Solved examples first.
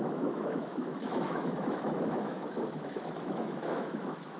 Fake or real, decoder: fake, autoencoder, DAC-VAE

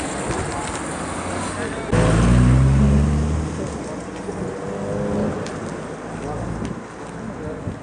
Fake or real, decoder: real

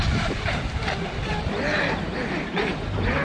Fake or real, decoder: fake, vocoder, BigVGAN v2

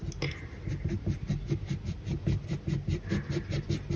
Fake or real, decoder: real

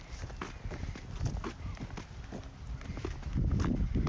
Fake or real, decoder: real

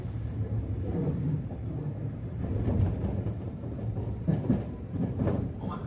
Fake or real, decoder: fake, vocoder, BigVGAN v2